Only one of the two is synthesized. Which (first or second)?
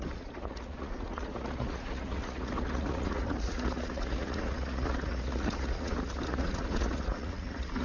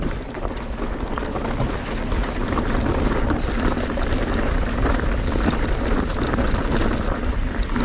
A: first